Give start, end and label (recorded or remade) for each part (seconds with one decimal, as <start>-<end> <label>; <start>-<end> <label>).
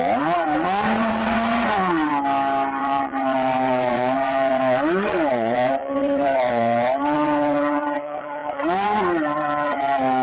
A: 0.0-2.1 remade; 2.1-2.8 recorded; 2.8-10.2 remade